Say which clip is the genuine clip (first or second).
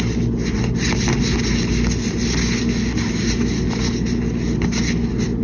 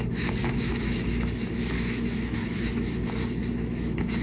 first